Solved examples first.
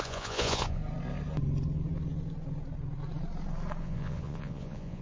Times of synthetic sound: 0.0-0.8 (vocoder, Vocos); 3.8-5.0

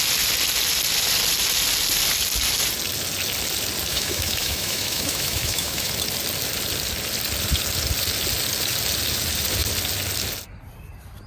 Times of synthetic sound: 3.9-5.9 (autoencoder, DAC-VAE)